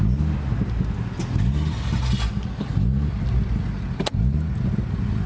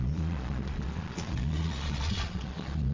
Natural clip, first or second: first